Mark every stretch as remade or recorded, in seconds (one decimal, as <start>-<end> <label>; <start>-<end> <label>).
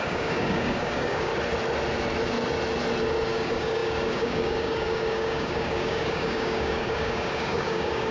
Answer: 0.0-1.3 remade; 1.3-3.3 recorded; 3.3-8.1 remade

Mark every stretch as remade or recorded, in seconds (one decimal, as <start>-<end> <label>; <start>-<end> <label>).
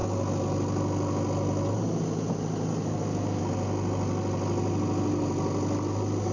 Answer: 0.0-2.7 recorded; 2.7-3.4 remade; 3.4-6.3 recorded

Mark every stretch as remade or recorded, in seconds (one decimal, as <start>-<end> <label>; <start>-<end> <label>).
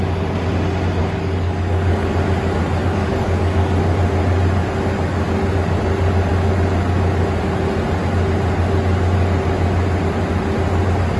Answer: 0.0-1.0 recorded; 1.0-2.1 remade; 2.1-2.8 recorded; 2.8-4.0 remade; 4.0-11.2 recorded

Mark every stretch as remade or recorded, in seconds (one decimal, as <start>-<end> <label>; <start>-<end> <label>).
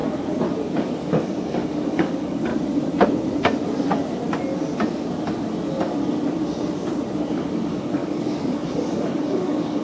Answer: 0.0-0.8 recorded; 0.8-2.5 remade; 2.5-7.3 recorded; 7.3-9.8 remade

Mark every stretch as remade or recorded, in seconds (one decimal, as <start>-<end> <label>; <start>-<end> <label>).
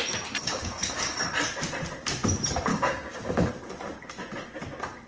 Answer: 0.0-0.4 recorded; 0.4-1.2 remade; 1.2-2.7 recorded; 2.7-3.5 remade; 3.5-5.1 recorded